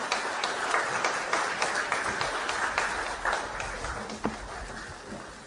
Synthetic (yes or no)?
no